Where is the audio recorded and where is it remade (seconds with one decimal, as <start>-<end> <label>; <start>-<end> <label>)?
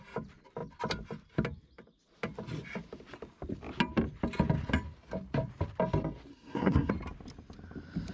0.0-6.3 recorded; 6.3-6.9 remade; 6.9-8.1 recorded